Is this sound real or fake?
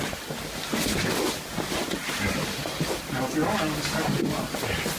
real